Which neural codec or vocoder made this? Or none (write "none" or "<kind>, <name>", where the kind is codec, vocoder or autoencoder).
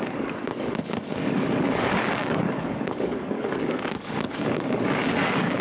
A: codec, DAC